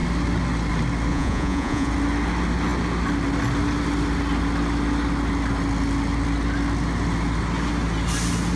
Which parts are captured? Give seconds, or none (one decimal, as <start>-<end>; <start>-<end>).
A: 0.0-1.1; 1.9-8.6